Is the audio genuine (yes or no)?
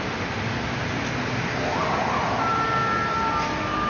yes